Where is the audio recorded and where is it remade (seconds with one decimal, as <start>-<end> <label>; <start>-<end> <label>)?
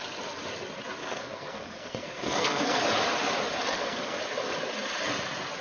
0.0-1.0 recorded; 1.0-2.8 remade; 2.8-3.7 recorded; 3.7-4.2 remade; 4.2-5.6 recorded